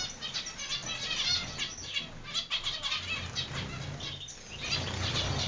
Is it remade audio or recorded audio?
recorded